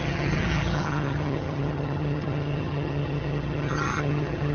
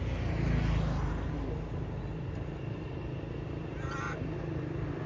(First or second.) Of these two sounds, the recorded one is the second